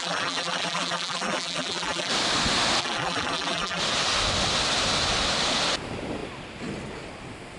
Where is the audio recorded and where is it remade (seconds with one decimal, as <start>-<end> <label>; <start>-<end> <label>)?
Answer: 0.0-2.1 remade; 2.1-2.8 recorded; 2.8-3.8 remade; 3.8-7.6 recorded